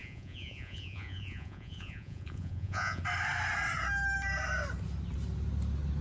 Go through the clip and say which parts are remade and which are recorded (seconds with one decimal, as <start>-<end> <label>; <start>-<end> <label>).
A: 0.0-3.0 remade; 3.0-6.0 recorded